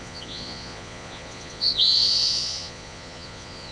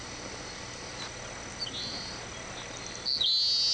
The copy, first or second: first